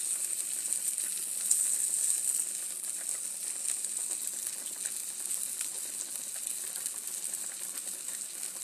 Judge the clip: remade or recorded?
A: recorded